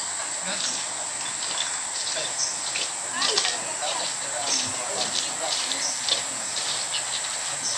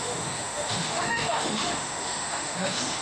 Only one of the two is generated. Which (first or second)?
second